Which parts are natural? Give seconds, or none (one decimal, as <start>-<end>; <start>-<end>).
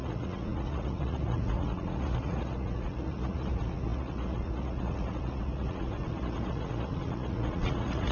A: none